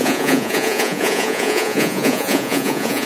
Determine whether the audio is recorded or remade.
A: remade